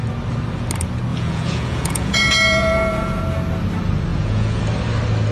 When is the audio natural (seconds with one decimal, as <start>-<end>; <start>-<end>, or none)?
0.0-1.1; 3.2-4.1; 4.6-5.3